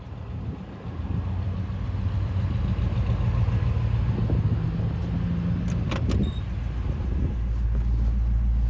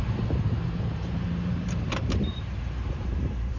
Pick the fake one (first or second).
second